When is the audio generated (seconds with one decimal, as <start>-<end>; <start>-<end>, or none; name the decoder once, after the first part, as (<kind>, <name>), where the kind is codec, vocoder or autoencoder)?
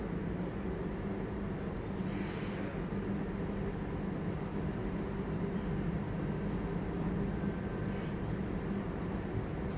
none